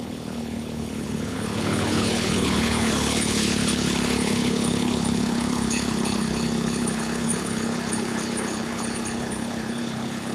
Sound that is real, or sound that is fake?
fake